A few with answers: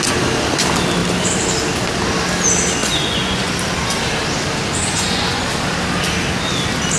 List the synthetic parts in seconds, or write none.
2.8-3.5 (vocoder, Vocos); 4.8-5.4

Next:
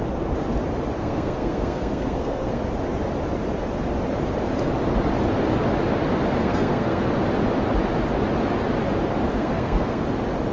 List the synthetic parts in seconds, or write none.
1.0-2.6 (codec, SNAC); 6.4-7.0; 9.3-10.0

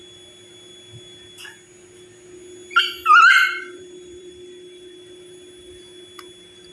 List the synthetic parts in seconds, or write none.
3.3-5.7 (vocoder, BigVGAN v2)

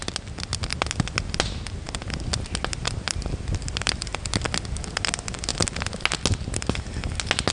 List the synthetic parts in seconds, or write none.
none

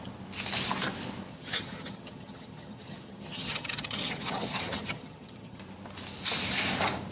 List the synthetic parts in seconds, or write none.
1.3-5.6 (vocoder, HiFi-GAN)

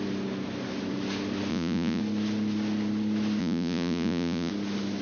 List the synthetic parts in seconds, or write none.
1.5-2.0 (vocoder, Vocos); 3.4-4.5